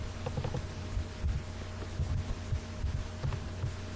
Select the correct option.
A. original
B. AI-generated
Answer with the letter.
A